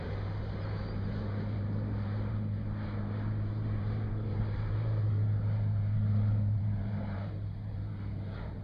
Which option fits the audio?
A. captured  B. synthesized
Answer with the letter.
B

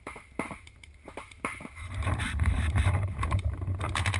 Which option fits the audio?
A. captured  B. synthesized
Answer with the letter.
B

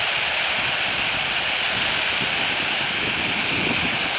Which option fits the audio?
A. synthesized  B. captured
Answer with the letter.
A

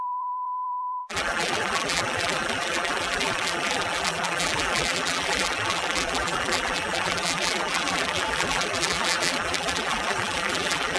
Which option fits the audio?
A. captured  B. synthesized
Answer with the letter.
B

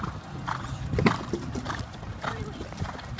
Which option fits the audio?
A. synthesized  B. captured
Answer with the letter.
A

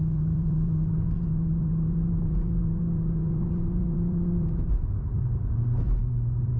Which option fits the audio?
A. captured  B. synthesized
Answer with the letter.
B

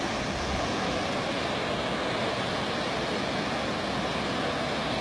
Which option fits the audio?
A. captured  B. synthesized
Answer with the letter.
A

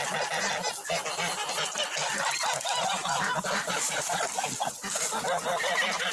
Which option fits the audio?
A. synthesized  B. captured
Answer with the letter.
B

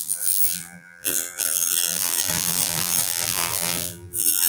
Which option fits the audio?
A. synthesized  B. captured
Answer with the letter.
A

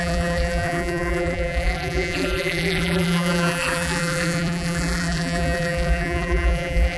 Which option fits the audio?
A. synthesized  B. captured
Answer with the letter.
A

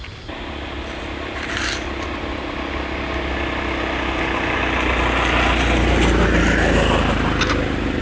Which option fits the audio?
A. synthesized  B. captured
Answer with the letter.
B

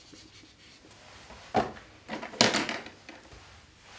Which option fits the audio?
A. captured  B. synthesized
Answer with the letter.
A